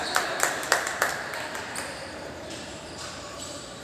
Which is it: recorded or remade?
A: remade